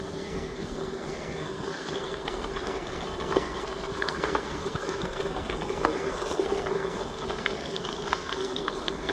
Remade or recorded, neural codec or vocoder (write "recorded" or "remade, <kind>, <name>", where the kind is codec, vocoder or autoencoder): remade, codec, SNAC